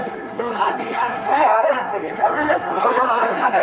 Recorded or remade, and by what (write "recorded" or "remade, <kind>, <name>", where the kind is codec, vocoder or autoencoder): remade, codec, SNAC